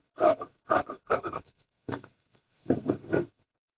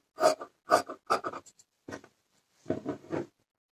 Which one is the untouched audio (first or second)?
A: second